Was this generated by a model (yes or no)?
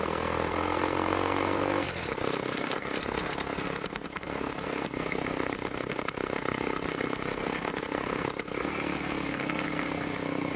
yes